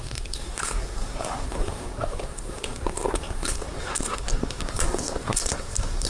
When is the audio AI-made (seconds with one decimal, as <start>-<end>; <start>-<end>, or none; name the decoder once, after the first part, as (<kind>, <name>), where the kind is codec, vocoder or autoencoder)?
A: 0.0-6.1 (codec, SNAC)